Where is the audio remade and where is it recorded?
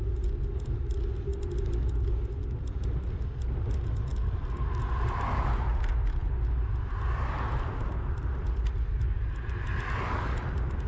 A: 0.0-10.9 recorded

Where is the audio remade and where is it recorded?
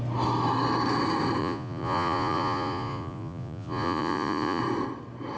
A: 0.0-1.4 recorded; 1.4-4.6 remade; 4.6-5.4 recorded